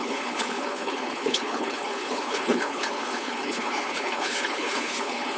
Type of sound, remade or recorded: remade